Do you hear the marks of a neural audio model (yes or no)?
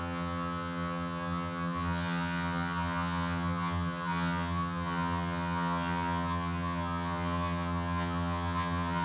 yes